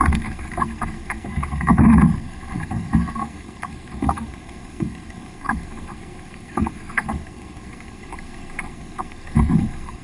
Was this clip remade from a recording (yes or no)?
yes